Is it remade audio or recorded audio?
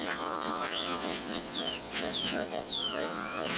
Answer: remade